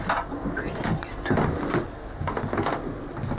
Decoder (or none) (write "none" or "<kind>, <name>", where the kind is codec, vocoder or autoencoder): none